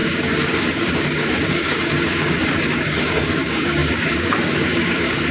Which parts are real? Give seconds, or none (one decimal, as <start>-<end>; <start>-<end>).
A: none